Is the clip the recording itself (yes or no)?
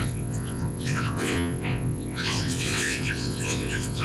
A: no